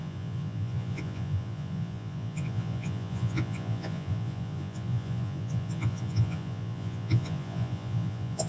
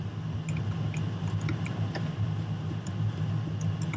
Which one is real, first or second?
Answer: second